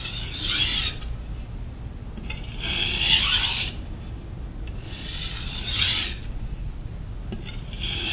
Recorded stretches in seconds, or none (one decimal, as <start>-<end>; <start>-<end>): 0.0-4.8; 6.9-8.1